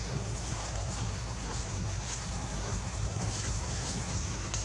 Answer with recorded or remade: remade